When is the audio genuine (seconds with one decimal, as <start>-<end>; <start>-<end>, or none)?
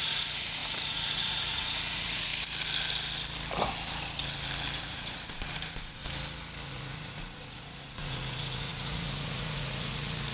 2.3-4.8; 6.0-6.7